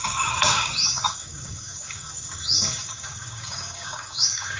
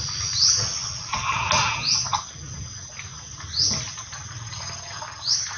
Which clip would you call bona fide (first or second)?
second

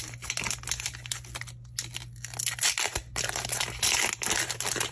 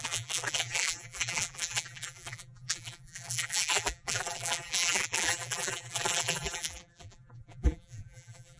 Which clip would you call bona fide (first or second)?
first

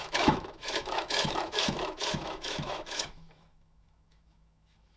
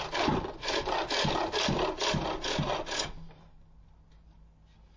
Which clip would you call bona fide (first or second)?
second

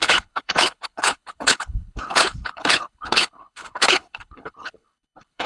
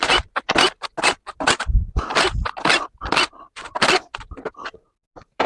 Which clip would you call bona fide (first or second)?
second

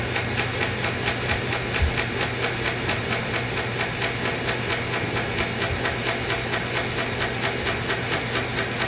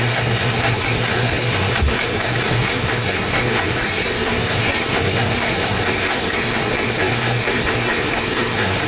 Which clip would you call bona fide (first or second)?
first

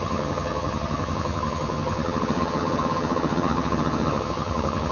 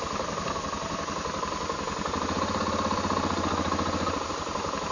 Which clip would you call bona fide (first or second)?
second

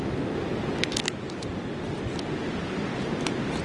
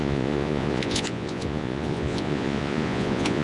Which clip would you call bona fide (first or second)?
first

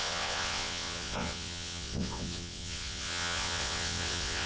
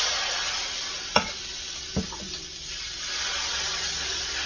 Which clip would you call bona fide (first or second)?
second